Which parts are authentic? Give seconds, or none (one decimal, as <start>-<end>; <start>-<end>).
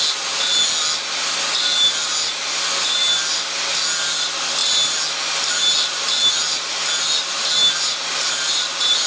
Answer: 0.0-9.1